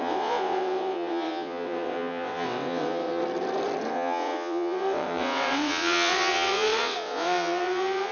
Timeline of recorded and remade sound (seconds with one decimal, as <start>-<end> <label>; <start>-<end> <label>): 0.0-3.2 remade; 3.2-3.9 recorded; 3.9-8.1 remade